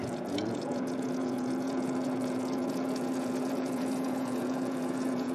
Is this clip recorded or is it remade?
remade